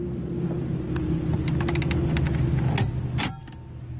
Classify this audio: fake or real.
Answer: real